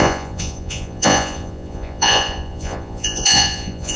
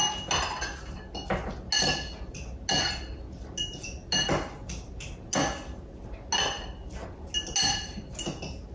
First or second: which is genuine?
second